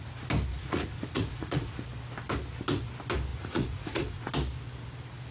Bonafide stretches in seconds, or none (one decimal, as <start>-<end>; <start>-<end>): 0.0-0.5; 1.7-3.3; 4.3-5.3